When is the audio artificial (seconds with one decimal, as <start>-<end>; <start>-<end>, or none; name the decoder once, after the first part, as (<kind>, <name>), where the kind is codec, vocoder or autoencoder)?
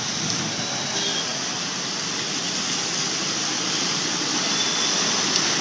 none